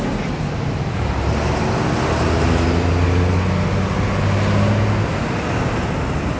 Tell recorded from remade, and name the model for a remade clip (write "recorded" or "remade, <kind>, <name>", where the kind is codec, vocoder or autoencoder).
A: recorded